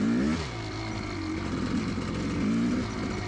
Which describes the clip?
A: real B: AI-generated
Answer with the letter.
A